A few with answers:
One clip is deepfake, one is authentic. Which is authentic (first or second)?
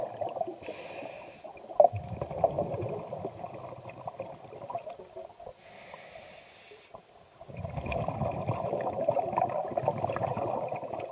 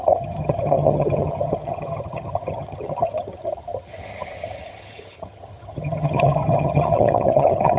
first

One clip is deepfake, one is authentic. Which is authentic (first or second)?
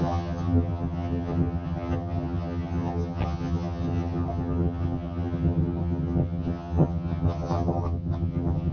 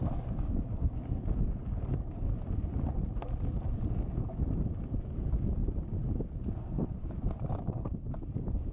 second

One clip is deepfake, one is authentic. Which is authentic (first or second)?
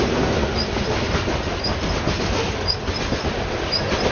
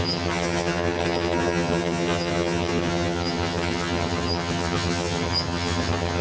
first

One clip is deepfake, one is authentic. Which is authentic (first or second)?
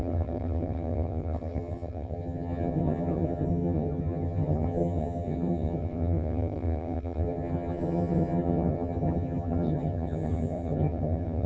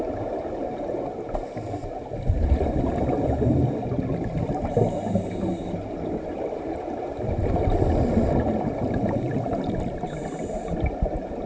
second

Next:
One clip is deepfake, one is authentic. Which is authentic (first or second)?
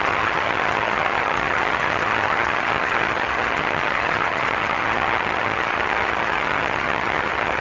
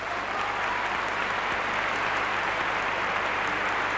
second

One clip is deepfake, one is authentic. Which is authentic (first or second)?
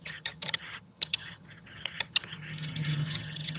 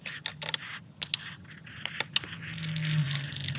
second